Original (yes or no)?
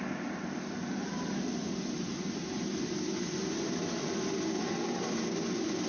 yes